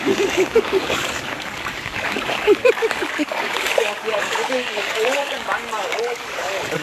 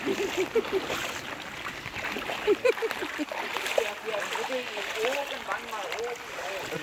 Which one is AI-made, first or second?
first